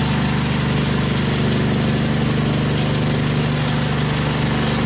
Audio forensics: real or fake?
real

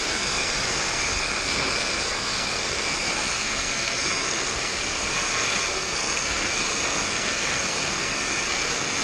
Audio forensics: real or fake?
fake